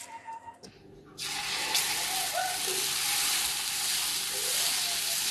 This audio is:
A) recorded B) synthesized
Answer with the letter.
A